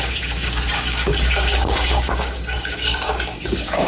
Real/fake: fake